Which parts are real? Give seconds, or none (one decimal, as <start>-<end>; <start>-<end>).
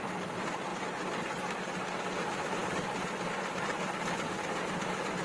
0.7-2.2